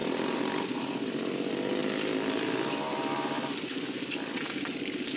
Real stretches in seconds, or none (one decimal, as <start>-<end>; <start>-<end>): 0.6-5.2